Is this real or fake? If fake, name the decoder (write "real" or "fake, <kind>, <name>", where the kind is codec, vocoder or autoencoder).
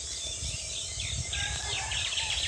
real